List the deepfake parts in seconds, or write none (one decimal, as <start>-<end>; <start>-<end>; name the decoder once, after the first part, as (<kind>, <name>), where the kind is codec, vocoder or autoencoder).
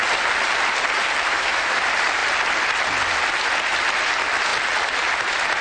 1.3-1.8 (autoencoder, DAC-VAE)